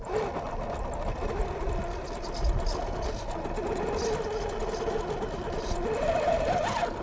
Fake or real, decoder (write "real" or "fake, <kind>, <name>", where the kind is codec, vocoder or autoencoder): real